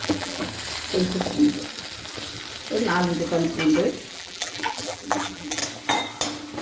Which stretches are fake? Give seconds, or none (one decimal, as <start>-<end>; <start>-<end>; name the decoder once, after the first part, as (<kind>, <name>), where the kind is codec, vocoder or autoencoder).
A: 0.0-0.4 (vocoder, BigVGAN v2); 4.1-5.6